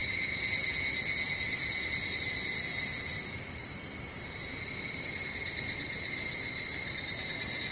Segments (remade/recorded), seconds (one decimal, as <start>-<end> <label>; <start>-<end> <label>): 0.0-7.7 recorded